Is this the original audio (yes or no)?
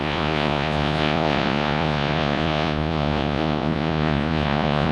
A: no